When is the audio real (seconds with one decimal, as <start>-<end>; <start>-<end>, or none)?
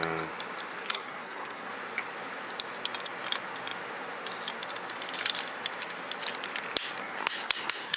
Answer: 0.0-0.8; 1.7-7.0